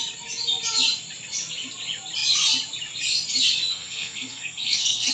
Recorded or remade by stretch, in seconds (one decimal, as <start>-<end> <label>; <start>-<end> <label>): 0.0-3.7 recorded; 3.7-5.1 remade